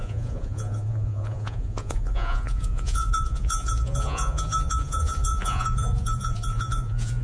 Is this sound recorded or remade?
remade